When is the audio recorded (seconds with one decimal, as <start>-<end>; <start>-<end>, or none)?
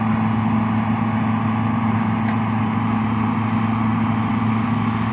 0.0-5.1